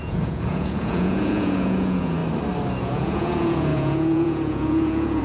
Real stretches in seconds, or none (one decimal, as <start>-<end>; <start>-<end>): 2.2-2.8